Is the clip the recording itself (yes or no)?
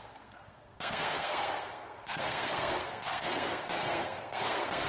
no